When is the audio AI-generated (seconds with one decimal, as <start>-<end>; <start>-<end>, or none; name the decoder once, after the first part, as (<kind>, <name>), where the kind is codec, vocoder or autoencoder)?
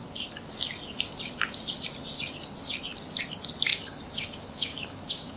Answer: 3.7-5.4 (autoencoder, DAC-VAE)